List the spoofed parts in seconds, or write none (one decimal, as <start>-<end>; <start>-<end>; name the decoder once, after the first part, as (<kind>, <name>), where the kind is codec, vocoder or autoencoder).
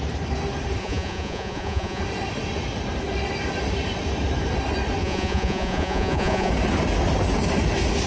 0.8-2.0 (vocoder, Vocos); 5.0-6.5